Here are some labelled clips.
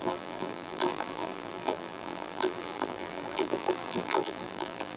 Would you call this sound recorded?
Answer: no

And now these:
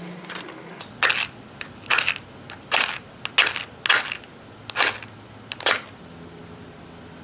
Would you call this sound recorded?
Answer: yes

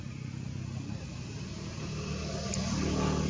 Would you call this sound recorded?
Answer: yes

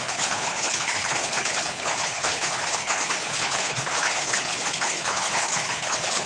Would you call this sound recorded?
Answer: no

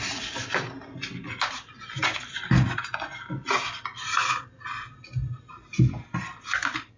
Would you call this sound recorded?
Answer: yes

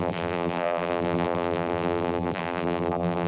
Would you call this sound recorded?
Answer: no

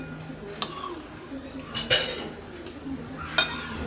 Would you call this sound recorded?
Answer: yes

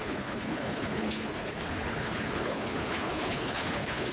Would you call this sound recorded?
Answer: no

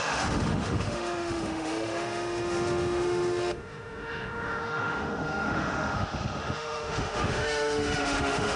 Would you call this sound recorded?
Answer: no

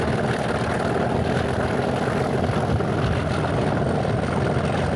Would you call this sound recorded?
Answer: yes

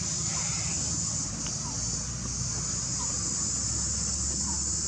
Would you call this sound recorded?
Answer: yes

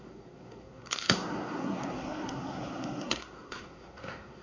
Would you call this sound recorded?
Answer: no